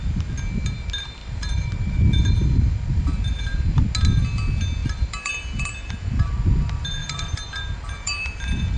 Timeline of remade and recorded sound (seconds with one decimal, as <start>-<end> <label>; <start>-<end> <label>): 0.0-1.2 recorded; 1.2-3.0 remade; 3.0-4.8 recorded; 4.8-6.4 remade; 6.4-7.0 recorded; 7.0-8.8 remade